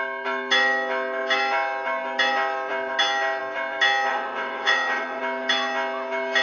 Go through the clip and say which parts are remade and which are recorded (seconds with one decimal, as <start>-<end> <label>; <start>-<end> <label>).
0.0-4.1 recorded; 4.1-5.2 remade; 5.2-6.4 recorded

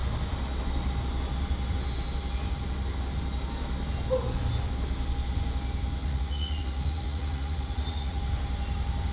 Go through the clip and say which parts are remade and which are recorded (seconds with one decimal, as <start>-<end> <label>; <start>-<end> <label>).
0.0-6.0 recorded; 6.0-8.2 remade; 8.2-9.1 recorded

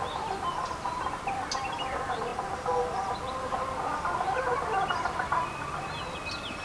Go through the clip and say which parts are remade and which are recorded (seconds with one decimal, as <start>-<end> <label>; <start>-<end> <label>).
0.0-6.6 recorded

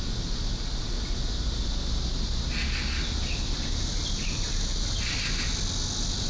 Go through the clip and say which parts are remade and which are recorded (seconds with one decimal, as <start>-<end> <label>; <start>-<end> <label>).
0.0-3.9 recorded; 3.9-5.1 remade; 5.1-6.3 recorded